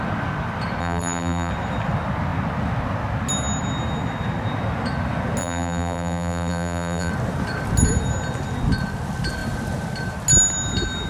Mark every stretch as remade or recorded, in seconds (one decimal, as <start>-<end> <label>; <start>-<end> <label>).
0.0-0.8 recorded; 0.8-1.5 remade; 1.5-5.4 recorded; 5.4-7.1 remade; 7.1-11.1 recorded